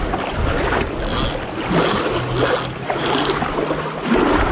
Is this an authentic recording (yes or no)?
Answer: yes